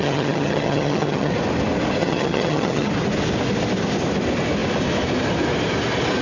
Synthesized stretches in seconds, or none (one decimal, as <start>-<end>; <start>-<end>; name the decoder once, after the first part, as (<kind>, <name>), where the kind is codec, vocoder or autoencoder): 0.0-1.3 (vocoder, HiFi-GAN); 2.0-2.9